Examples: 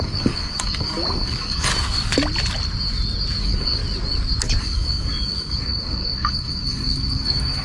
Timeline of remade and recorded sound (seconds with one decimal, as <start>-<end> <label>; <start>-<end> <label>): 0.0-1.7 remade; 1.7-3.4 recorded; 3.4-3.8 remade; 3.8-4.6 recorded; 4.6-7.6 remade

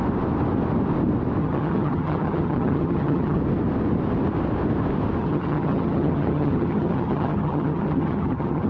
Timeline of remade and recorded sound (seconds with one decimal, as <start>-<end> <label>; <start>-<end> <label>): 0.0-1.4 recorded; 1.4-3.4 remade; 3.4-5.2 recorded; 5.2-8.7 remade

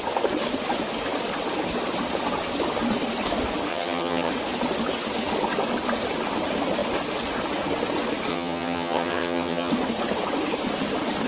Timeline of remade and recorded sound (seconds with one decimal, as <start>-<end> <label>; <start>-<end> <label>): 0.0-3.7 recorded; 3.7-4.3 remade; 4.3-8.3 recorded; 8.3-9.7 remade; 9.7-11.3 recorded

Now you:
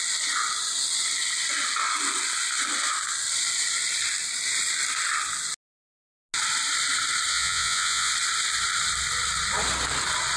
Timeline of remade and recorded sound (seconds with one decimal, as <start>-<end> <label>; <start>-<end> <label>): 0.0-7.3 recorded; 7.3-8.1 remade; 8.1-10.4 recorded